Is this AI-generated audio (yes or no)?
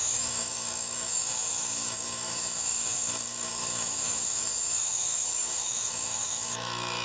yes